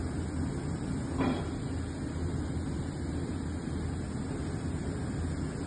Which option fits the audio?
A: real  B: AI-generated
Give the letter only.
A